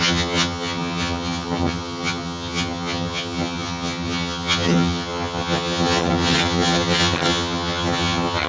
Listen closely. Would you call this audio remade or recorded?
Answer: remade